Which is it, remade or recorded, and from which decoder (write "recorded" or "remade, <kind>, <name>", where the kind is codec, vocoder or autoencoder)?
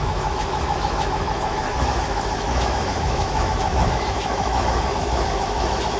remade, autoencoder, DAC-VAE